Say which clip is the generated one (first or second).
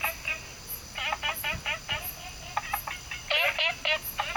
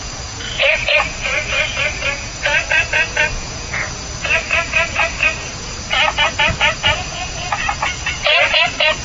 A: second